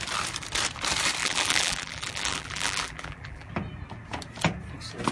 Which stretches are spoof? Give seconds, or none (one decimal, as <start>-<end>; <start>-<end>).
1.2-3.5